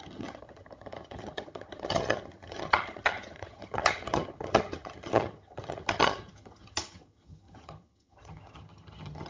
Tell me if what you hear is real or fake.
fake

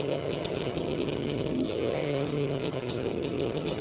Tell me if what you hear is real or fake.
fake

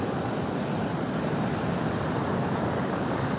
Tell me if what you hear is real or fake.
real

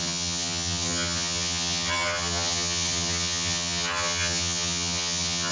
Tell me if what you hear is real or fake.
fake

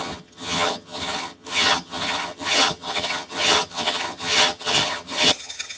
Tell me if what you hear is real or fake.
fake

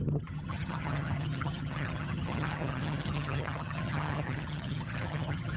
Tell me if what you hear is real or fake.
fake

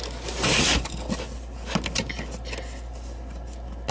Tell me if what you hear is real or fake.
real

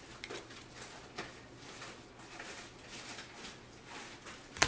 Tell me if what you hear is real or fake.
real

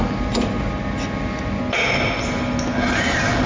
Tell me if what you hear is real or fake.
real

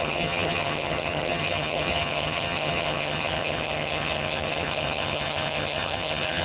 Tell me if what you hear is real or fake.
fake